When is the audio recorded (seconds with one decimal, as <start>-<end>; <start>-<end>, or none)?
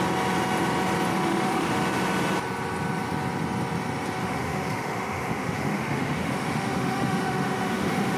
0.0-1.1; 1.7-4.2